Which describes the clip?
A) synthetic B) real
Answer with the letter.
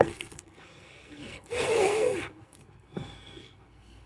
A